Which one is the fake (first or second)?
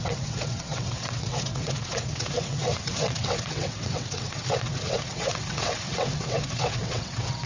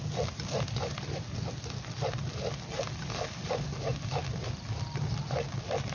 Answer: first